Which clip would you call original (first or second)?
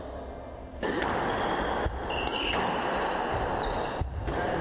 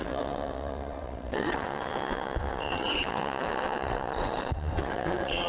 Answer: first